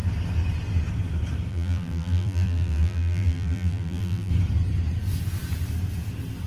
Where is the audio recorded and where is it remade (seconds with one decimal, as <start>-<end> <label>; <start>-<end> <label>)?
0.0-1.5 recorded; 1.5-4.3 remade; 4.3-6.5 recorded